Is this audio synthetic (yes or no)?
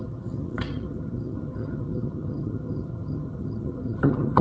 yes